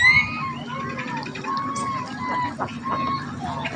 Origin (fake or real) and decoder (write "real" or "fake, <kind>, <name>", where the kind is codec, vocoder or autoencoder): real